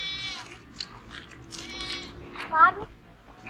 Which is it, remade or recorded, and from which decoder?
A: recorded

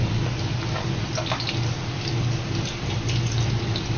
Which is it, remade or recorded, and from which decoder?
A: recorded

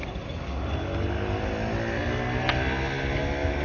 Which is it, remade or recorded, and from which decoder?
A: recorded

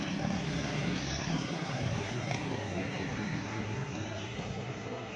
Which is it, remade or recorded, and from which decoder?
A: remade, codec, SNAC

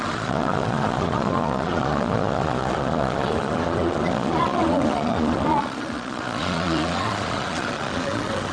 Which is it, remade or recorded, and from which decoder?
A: remade, vocoder, Vocos